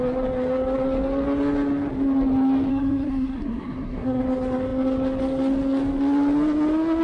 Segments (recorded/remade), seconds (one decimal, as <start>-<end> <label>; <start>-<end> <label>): 0.0-2.7 recorded; 2.7-4.2 remade; 4.2-7.0 recorded